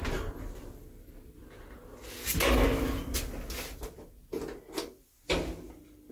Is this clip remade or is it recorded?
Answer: recorded